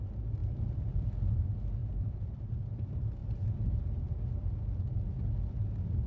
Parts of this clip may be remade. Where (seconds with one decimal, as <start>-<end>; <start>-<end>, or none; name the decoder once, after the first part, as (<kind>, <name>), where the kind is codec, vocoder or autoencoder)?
0.4-1.1 (vocoder, BigVGAN v2); 1.8-2.7